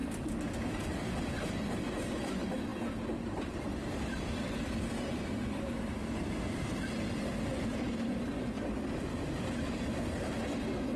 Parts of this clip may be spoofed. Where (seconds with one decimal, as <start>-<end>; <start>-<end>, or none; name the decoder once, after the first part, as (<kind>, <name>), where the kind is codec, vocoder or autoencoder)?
none